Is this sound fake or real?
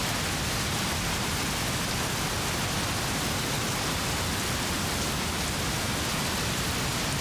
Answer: real